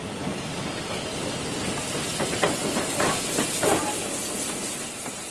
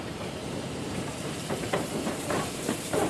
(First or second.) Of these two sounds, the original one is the first